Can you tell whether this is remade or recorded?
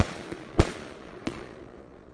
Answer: remade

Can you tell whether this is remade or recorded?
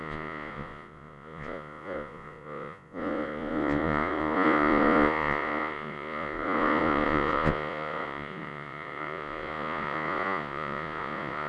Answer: remade